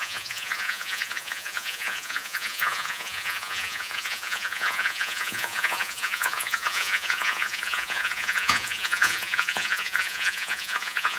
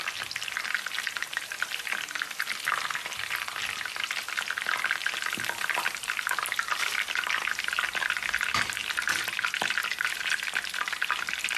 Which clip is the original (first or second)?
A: second